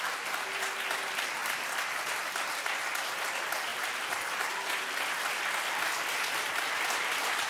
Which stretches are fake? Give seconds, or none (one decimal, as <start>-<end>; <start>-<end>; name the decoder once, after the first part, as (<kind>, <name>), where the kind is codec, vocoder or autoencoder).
1.4-2.3 (vocoder, BigVGAN v2); 3.7-7.5